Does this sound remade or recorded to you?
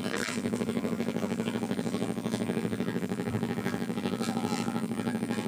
remade